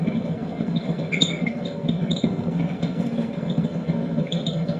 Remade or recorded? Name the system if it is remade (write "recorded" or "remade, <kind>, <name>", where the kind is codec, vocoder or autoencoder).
remade, codec, SNAC